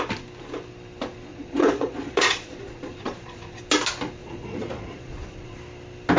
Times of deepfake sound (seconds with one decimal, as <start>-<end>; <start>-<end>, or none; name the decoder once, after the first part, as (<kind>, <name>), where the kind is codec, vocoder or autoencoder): 1.3-3.6 (vocoder, Vocos); 4.2-5.6